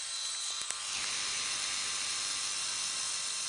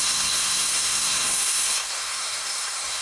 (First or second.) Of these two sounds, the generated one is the second